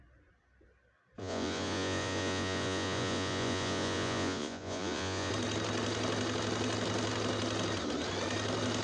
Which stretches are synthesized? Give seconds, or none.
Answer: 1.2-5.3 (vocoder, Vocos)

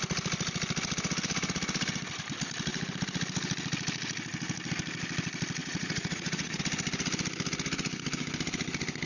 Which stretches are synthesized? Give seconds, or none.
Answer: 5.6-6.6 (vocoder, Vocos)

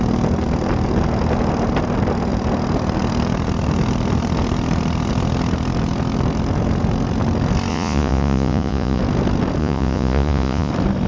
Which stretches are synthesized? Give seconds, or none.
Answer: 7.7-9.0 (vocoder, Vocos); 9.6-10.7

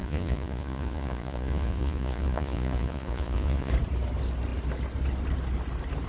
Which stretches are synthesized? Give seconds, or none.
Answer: 0.0-3.7 (vocoder, Vocos)

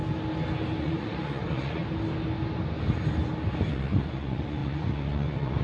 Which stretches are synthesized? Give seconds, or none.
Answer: 0.8-1.8 (vocoder, Vocos); 3.7-5.6

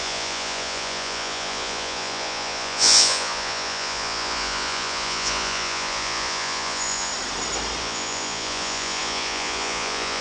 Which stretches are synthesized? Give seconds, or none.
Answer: 0.0-7.1 (vocoder, Vocos); 7.8-10.2

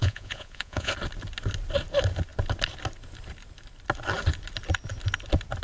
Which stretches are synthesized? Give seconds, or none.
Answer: 0.0-0.9 (vocoder, Vocos)